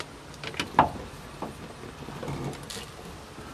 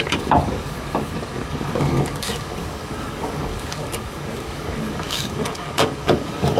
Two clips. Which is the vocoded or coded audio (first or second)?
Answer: second